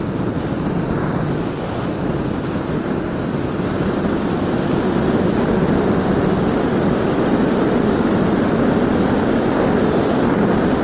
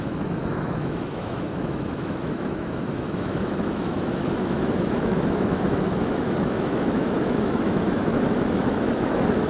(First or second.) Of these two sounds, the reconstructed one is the second